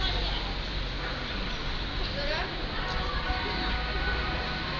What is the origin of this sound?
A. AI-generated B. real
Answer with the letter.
B